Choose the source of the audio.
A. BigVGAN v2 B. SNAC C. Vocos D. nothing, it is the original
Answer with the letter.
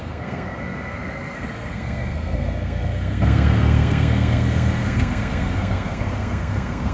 B